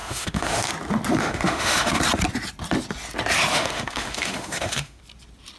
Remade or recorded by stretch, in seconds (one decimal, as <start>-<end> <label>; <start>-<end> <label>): 0.0-0.7 remade; 0.7-1.2 recorded; 1.2-2.0 remade; 2.0-3.5 recorded; 3.5-5.0 remade; 5.0-5.6 recorded